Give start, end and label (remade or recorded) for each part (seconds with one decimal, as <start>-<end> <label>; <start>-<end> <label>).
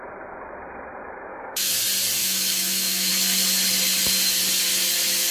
0.0-1.3 recorded; 1.3-1.8 remade; 1.8-2.2 recorded; 2.2-3.1 remade; 3.1-5.3 recorded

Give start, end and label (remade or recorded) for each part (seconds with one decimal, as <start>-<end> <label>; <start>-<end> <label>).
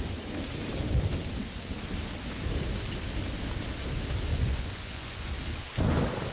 0.0-4.3 recorded; 4.3-5.3 remade; 5.3-6.3 recorded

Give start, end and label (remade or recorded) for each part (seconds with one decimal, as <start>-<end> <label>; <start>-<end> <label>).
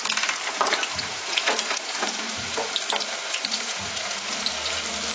0.0-0.9 recorded; 0.9-2.7 remade; 2.7-3.2 recorded; 3.2-4.4 remade; 4.4-5.1 recorded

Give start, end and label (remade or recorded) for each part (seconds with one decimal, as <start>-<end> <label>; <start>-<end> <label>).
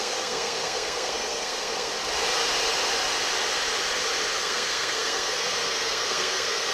0.0-1.9 remade; 1.9-4.4 recorded; 4.4-6.7 remade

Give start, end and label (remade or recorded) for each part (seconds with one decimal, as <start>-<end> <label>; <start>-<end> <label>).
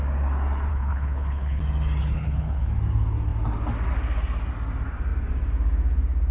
0.0-0.7 recorded; 0.7-1.6 remade; 1.6-2.0 recorded; 2.0-2.7 remade; 2.7-6.3 recorded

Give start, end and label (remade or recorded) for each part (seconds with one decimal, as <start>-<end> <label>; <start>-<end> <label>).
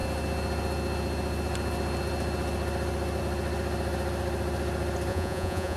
0.0-5.1 recorded; 5.1-5.8 remade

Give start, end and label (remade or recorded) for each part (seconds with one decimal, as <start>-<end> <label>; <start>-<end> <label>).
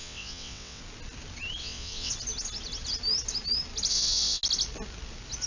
0.0-0.8 remade; 0.8-1.6 recorded; 1.6-2.1 remade; 2.1-3.9 recorded; 3.9-4.4 remade; 4.4-5.5 recorded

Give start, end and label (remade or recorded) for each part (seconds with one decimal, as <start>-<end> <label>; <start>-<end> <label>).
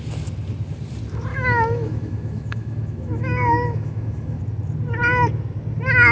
0.0-1.3 recorded; 1.3-4.4 remade; 4.4-6.1 recorded